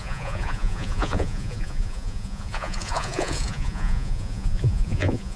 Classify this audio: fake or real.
fake